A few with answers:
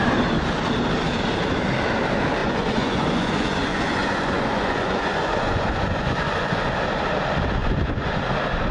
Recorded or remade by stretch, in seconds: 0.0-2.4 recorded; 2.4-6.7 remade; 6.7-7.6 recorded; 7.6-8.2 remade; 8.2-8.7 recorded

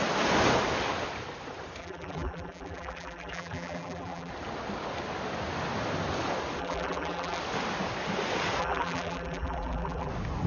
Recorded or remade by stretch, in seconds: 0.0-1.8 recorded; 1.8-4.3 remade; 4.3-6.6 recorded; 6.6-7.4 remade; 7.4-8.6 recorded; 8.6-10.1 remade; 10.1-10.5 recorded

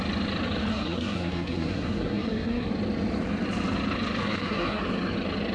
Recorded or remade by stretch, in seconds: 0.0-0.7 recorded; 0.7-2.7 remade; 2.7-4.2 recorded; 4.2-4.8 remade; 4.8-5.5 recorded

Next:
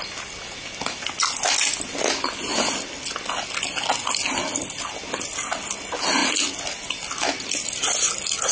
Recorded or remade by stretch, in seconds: 0.0-8.5 recorded